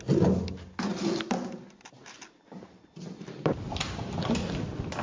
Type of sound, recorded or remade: recorded